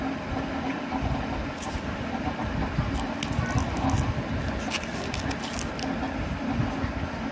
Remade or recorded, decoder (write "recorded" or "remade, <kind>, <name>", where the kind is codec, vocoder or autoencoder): recorded